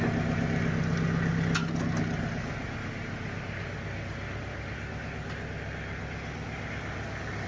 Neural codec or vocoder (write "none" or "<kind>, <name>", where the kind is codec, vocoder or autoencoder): none